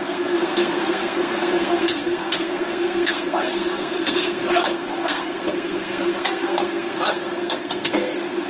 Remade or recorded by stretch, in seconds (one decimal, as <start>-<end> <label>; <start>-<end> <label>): 0.0-8.5 remade